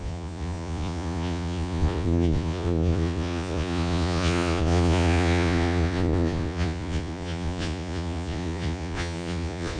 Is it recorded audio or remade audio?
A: remade